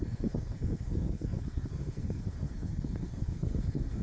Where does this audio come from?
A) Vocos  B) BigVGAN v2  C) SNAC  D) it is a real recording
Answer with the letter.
C